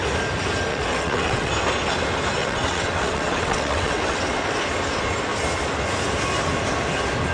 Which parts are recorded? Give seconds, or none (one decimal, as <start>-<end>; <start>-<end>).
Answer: 0.0-0.7; 1.5-2.4; 4.4-7.3